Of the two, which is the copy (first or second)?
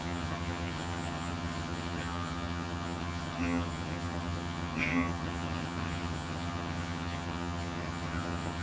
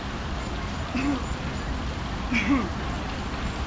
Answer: first